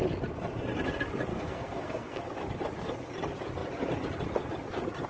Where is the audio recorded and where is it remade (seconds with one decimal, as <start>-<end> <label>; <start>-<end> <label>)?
0.0-1.3 recorded; 1.3-2.2 remade; 2.2-5.1 recorded